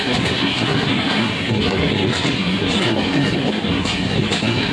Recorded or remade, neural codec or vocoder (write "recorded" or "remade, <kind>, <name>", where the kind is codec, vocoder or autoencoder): remade, codec, SNAC